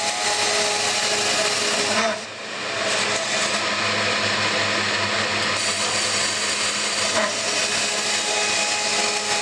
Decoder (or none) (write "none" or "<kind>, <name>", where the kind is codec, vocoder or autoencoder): none